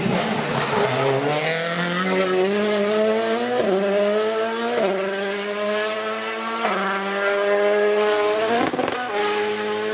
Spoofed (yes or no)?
no